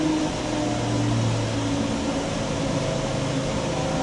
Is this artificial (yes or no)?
no